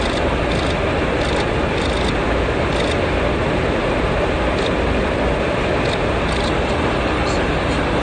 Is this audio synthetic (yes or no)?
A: no